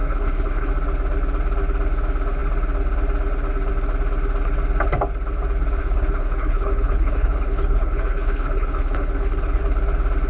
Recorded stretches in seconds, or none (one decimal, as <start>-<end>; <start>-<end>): 0.7-5.8; 9.6-10.3